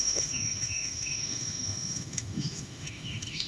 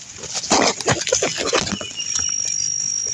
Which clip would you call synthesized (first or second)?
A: first